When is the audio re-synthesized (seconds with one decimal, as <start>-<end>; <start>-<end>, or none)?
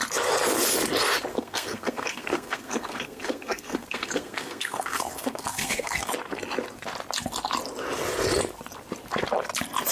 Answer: 1.3-6.1